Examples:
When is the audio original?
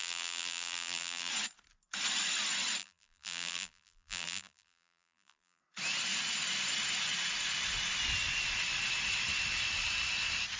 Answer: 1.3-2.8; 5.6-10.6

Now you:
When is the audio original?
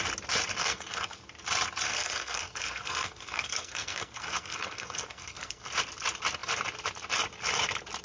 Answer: 0.0-0.6; 1.2-1.9; 5.7-8.0